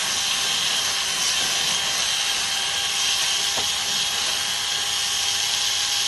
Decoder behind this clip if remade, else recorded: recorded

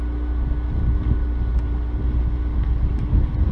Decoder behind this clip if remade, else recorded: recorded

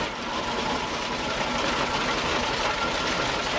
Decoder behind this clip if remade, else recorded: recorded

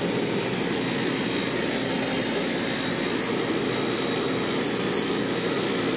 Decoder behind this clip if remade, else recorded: recorded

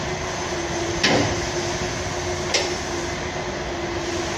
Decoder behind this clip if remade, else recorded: recorded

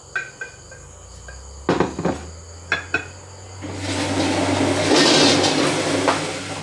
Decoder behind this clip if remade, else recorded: recorded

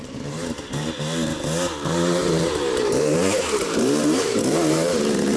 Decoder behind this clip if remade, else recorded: remade, vocoder, BigVGAN v2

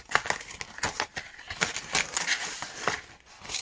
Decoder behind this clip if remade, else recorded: recorded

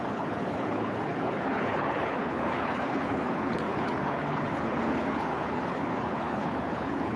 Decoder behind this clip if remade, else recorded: remade, codec, HILCodec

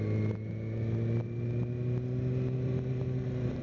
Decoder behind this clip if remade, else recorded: recorded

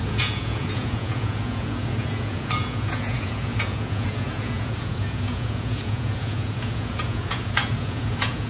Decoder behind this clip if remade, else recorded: remade, vocoder, Vocos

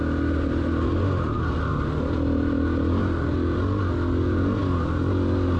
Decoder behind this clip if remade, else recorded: recorded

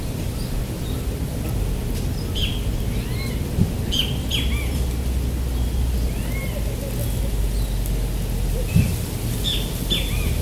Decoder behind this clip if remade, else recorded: recorded